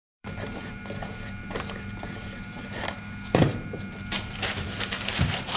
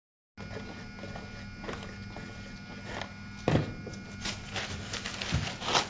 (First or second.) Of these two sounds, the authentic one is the second